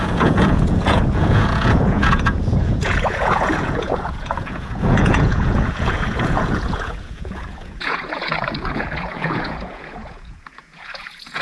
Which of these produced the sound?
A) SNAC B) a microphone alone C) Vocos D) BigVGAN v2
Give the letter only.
C